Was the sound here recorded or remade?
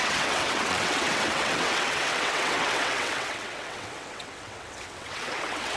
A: remade